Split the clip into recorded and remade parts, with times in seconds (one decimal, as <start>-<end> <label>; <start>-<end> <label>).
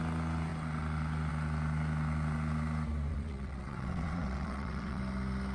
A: 0.0-3.1 recorded; 3.1-5.0 remade; 5.0-5.5 recorded